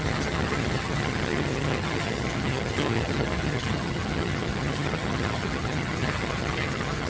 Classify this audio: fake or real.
fake